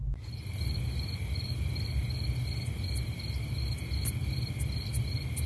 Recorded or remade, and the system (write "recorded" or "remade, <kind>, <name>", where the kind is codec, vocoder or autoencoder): recorded